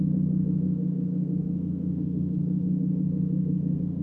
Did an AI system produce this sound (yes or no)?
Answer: yes